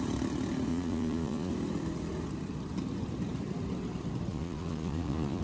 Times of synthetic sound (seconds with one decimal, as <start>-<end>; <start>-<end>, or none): 0.7-1.5; 4.3-5.4